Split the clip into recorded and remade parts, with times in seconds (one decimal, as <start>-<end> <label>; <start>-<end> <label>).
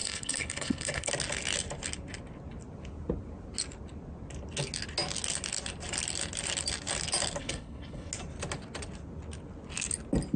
0.0-1.1 remade; 1.1-7.4 recorded; 7.4-8.1 remade; 8.1-10.4 recorded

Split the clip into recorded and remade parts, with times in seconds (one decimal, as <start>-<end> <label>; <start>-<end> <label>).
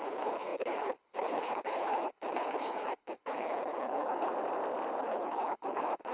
0.0-4.3 remade; 4.3-5.0 recorded; 5.0-6.1 remade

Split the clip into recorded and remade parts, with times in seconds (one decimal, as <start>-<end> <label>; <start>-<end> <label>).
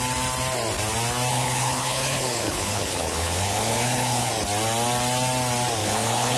0.0-1.3 recorded; 1.3-4.3 remade; 4.3-5.8 recorded; 5.8-6.4 remade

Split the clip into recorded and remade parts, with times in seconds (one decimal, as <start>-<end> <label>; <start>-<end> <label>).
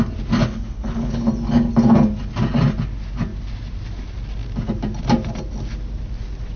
0.0-0.4 recorded; 0.4-1.3 remade; 1.3-6.6 recorded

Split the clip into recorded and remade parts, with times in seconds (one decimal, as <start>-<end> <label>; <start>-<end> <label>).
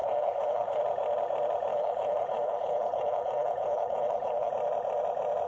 0.0-0.8 remade; 0.8-1.7 recorded; 1.7-4.5 remade; 4.5-5.5 recorded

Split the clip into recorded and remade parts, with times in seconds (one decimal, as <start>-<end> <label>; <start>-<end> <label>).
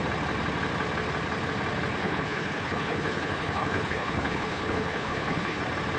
0.0-2.0 recorded; 2.0-5.6 remade; 5.6-6.0 recorded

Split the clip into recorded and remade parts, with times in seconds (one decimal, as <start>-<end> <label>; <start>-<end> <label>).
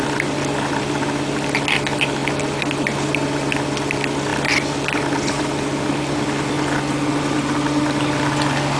0.0-8.8 recorded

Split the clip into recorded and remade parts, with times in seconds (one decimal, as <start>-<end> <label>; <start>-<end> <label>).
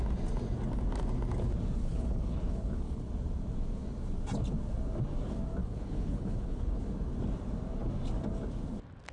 0.0-1.8 recorded; 1.8-3.1 remade; 3.1-5.6 recorded; 5.6-6.8 remade; 6.8-9.1 recorded